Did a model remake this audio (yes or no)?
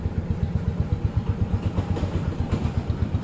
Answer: no